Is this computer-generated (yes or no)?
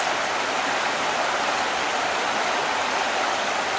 no